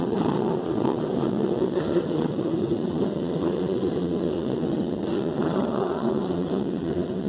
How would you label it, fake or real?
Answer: fake